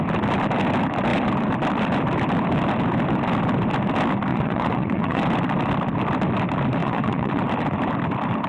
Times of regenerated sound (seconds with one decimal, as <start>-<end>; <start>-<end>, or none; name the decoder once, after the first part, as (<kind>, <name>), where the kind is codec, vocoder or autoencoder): 4.3-5.2 (vocoder, Vocos); 6.8-7.4